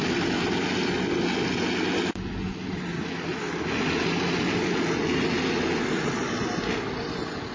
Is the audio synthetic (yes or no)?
no